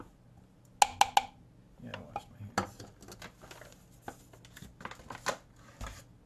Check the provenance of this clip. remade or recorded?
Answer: recorded